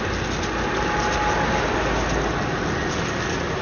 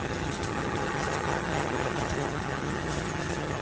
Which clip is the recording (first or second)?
first